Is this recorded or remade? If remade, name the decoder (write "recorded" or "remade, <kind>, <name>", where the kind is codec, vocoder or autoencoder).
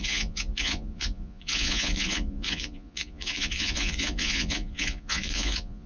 remade, vocoder, Vocos